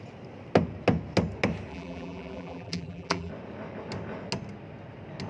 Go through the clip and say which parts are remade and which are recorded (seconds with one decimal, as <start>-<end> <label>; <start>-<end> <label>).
0.0-1.7 recorded; 1.7-3.3 remade; 3.3-5.3 recorded